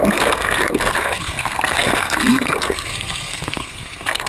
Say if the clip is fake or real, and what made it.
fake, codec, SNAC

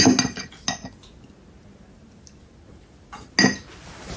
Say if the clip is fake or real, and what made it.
real